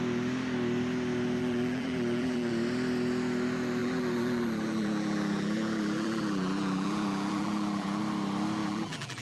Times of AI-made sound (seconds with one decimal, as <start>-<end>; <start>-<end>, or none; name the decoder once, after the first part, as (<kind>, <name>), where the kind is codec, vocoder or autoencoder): 1.4-2.5 (vocoder, BigVGAN v2); 3.8-8.0; 8.6-9.2